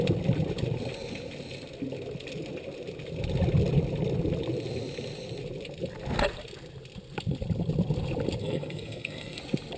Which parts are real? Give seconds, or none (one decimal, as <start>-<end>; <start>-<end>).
0.0-8.4; 9.4-9.8